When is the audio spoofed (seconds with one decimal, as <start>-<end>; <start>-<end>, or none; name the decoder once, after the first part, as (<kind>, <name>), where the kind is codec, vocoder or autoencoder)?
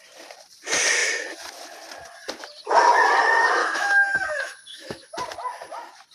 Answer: 3.6-5.1 (autoencoder, DAC-VAE)